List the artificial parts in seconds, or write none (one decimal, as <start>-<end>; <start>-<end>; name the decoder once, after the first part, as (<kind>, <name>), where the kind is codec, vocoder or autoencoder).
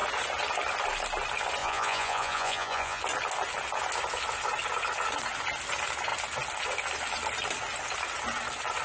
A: 1.6-3.0 (vocoder, Vocos)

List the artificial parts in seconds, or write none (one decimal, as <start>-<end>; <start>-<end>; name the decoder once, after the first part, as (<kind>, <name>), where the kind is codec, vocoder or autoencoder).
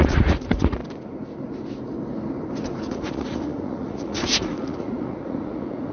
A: 0.0-0.8 (vocoder, Vocos); 2.9-5.9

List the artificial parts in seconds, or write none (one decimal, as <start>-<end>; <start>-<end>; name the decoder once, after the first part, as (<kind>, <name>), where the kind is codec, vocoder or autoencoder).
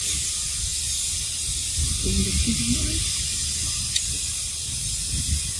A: none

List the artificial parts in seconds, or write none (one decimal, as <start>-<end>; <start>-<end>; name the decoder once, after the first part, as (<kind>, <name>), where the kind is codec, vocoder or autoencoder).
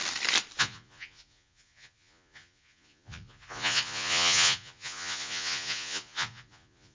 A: 0.6-6.9 (vocoder, Vocos)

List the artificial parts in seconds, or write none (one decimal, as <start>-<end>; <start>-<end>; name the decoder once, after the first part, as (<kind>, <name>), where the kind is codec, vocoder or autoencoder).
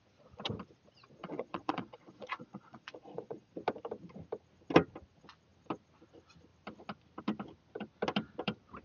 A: 1.2-3.5 (vocoder, Vocos)